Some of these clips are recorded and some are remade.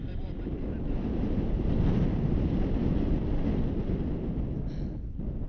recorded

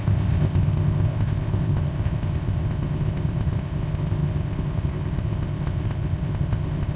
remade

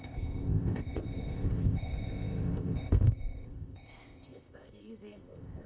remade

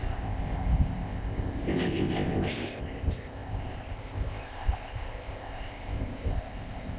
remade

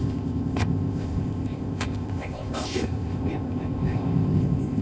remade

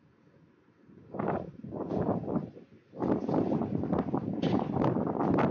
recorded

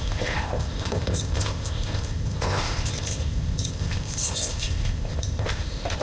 remade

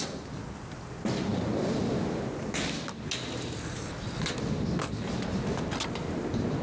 recorded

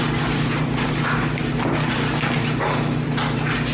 recorded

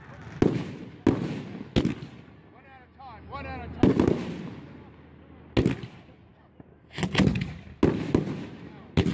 recorded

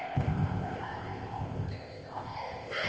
remade